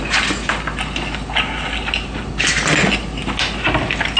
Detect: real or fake real